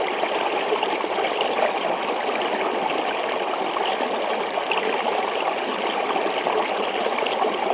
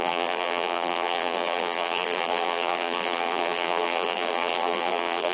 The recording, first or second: first